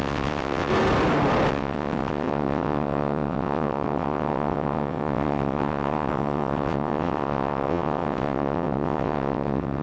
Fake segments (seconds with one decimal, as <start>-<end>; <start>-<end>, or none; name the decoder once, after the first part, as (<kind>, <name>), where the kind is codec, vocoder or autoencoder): 0.0-0.7 (vocoder, WaveNeXt); 1.5-9.8